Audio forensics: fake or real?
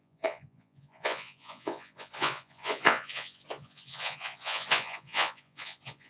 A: fake